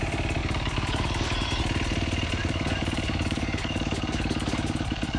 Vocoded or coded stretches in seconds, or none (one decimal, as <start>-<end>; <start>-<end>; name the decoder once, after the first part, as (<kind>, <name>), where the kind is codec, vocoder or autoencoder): 0.4-1.6 (codec, DAC); 2.4-5.2